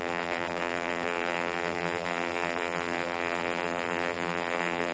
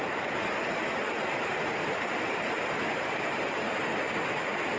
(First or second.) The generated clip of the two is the first